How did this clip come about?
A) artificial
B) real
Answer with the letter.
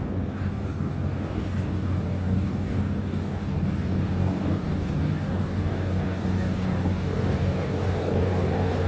A